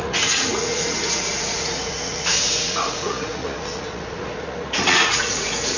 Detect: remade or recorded remade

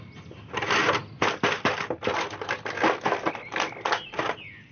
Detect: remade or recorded recorded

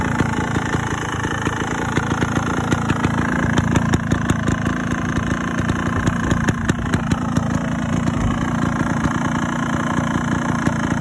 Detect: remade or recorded recorded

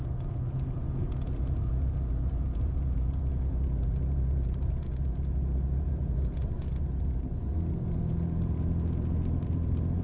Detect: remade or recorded remade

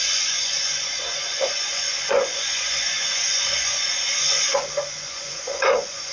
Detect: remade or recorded remade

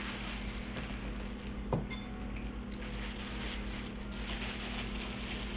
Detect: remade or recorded recorded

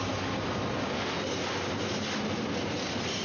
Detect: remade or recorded recorded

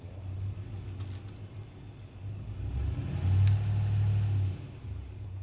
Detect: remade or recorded recorded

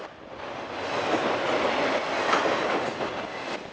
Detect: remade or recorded recorded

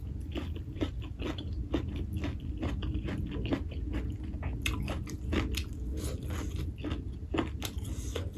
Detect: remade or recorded recorded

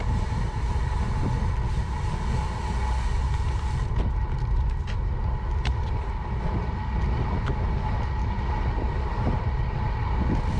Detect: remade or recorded recorded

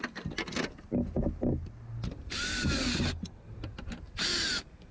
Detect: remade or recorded recorded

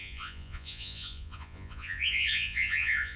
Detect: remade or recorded remade